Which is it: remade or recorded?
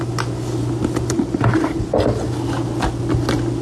recorded